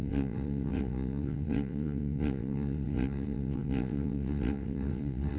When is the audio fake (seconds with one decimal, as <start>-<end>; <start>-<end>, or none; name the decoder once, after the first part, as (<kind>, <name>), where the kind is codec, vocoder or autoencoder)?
0.0-5.4 (vocoder, WaveNeXt)